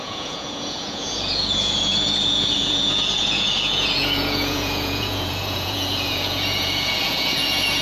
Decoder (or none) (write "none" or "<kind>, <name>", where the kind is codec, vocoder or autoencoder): vocoder, Vocos